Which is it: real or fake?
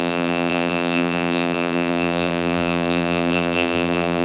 fake